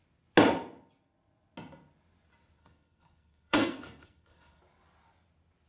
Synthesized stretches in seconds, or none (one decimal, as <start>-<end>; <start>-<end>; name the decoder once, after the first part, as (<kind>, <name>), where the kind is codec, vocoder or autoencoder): 2.6-4.6 (codec, SNAC)